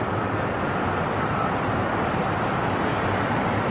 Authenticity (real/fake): fake